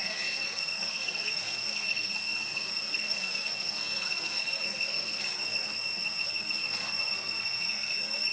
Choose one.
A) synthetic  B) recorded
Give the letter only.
A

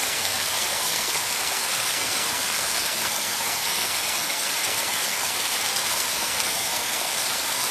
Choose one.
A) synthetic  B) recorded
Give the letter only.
A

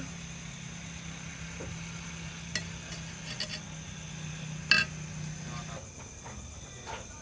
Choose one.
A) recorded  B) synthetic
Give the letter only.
A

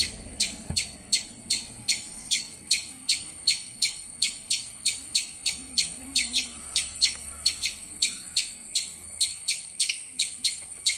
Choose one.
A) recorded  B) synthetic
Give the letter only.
B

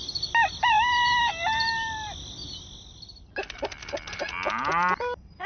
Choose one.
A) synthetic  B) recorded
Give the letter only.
B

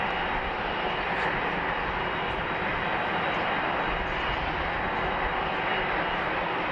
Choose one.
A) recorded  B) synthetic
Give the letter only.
A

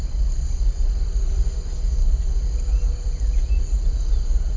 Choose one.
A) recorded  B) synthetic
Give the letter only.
A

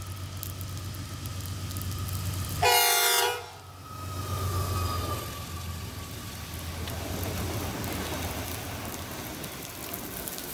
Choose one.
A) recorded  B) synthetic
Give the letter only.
A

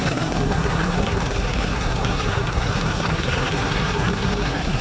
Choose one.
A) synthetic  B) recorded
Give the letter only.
A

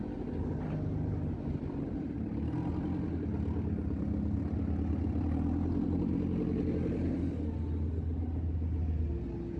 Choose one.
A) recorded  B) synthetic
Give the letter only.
A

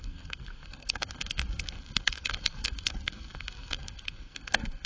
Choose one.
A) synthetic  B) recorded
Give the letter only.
A